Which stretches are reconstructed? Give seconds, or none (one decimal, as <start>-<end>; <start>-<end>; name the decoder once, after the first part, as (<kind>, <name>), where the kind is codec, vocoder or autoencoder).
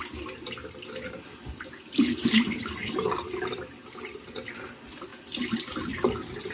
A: 0.6-4.5 (vocoder, BigVGAN v2); 5.1-6.1